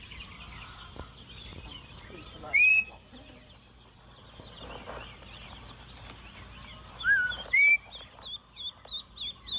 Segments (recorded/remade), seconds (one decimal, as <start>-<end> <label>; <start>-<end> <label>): 0.0-1.5 recorded; 1.5-2.9 remade; 2.9-9.6 recorded